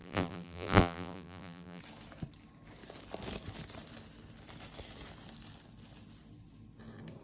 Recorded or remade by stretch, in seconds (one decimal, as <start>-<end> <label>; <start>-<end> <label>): 0.0-1.8 remade; 1.8-7.2 recorded